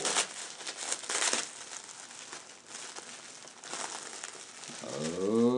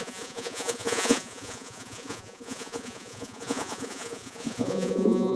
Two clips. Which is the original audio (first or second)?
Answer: first